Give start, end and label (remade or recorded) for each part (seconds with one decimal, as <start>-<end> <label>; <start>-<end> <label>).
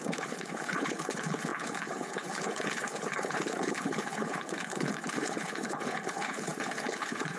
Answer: 0.0-7.4 remade